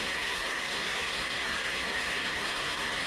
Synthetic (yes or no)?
yes